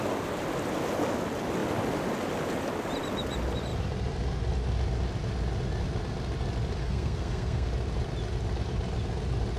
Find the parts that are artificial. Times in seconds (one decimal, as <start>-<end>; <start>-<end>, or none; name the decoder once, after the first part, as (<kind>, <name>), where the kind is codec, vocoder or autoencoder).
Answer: 6.8-7.7 (codec, SNAC)